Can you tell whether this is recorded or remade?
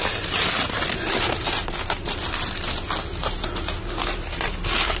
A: recorded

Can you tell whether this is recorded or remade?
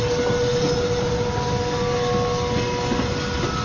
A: recorded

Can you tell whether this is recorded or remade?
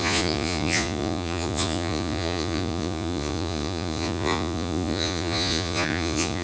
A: remade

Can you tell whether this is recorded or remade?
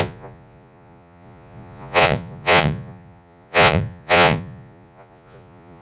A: remade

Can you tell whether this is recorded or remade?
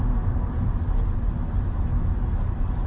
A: recorded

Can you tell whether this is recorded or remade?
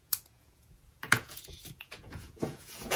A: remade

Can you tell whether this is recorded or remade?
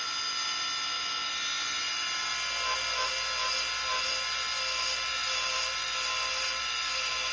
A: recorded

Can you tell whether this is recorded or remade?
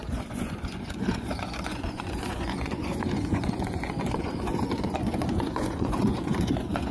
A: remade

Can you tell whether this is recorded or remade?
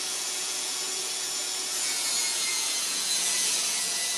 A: remade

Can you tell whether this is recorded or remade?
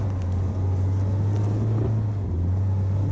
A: recorded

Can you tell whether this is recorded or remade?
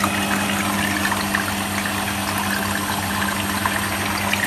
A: recorded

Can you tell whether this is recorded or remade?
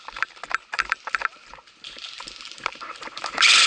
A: recorded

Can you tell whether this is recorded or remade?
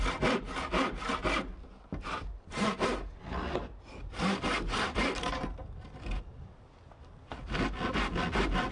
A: recorded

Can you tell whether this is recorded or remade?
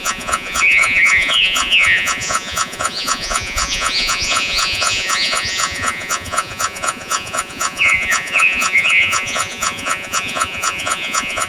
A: remade